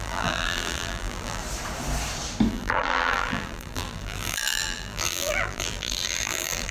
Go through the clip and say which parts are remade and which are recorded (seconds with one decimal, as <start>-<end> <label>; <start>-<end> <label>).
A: 0.0-1.4 remade; 1.4-2.5 recorded; 2.5-6.7 remade